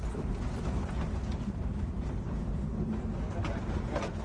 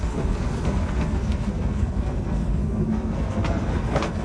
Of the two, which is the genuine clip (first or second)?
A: first